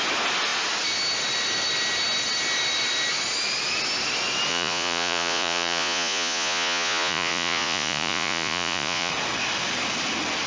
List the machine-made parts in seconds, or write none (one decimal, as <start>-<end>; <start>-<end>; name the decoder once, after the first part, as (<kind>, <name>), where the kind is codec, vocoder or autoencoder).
4.5-9.1 (vocoder, Vocos)